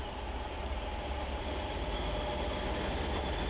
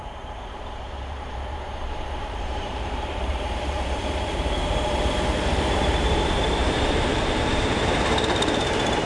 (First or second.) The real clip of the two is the first